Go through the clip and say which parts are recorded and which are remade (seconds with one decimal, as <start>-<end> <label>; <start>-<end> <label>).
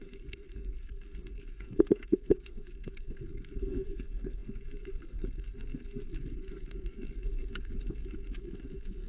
0.0-9.1 remade